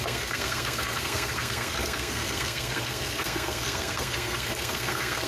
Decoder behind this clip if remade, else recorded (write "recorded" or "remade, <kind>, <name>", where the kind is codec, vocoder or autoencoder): remade, codec, SNAC